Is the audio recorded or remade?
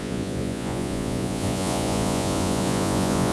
remade